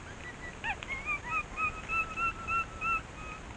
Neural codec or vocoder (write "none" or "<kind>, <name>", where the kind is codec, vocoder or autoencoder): none